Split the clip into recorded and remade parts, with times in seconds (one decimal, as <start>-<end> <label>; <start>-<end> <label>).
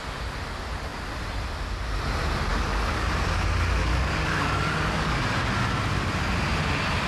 0.0-2.5 recorded; 2.5-3.1 remade; 3.1-3.8 recorded; 3.8-5.2 remade; 5.2-7.1 recorded